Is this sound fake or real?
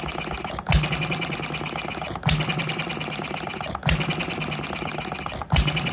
real